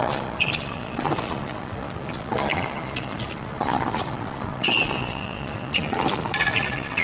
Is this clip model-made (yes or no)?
yes